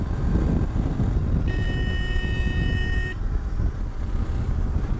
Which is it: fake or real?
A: real